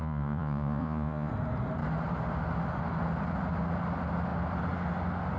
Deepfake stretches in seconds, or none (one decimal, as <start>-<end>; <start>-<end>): 0.0-1.3